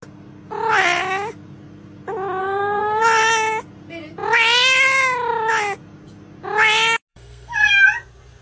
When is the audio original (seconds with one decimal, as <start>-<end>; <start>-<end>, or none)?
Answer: 0.0-2.4; 3.0-7.1; 7.7-8.4